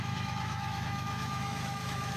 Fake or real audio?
fake